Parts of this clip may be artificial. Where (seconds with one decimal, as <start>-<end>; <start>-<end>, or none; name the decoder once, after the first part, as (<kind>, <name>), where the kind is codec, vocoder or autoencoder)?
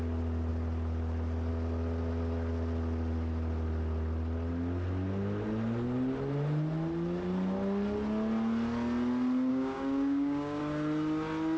9.5-10.6 (codec, DAC)